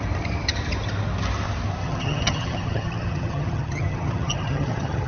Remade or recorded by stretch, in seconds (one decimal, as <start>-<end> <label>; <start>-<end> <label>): 0.0-1.8 recorded; 1.8-5.1 remade